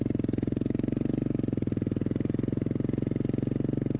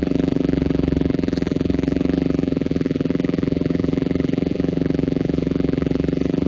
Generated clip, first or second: second